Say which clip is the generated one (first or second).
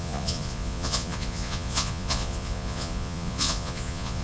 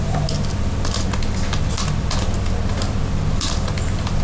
first